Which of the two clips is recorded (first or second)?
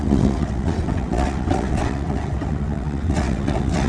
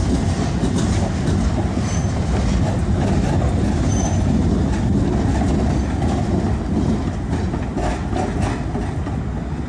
second